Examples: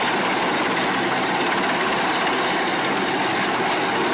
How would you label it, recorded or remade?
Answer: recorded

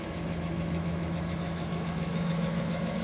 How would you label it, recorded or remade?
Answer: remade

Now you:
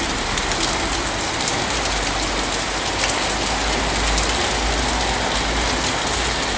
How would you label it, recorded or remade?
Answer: recorded